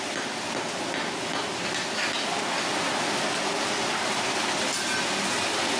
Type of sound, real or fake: real